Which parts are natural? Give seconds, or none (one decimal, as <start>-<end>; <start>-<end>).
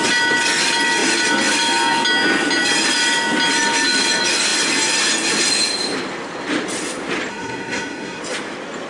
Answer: 0.0-7.3; 8.2-8.9